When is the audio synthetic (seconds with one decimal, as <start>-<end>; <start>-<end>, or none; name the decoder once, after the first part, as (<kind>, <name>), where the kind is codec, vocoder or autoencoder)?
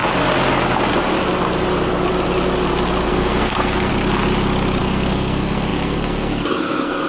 3.1-3.9 (codec, SNAC); 4.8-7.1